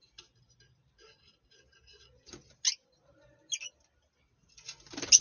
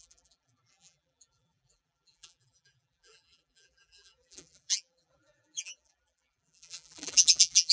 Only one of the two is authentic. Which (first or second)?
first